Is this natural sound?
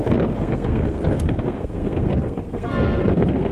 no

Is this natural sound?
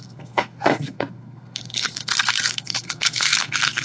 no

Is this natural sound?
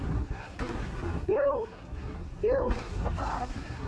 no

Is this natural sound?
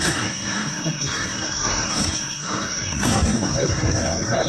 no